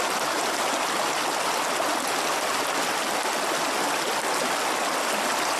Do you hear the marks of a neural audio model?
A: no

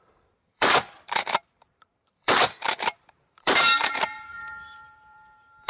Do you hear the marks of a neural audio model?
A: yes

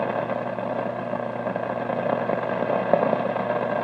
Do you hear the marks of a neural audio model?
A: yes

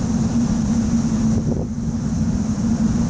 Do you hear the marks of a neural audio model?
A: no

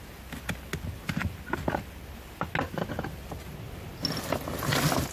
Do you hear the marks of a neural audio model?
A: no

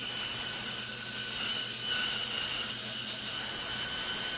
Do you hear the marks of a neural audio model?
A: no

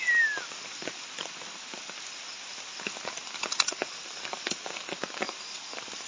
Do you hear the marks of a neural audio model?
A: no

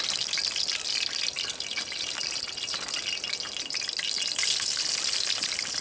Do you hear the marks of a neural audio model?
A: no